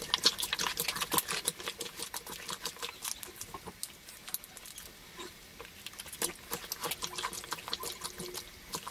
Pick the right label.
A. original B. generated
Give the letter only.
A